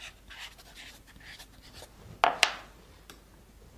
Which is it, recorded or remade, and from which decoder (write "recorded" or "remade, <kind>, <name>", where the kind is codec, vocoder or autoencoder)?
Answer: recorded